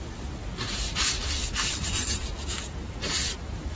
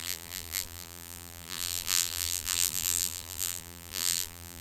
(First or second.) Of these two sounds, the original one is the first